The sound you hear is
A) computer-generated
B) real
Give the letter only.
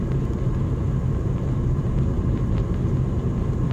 B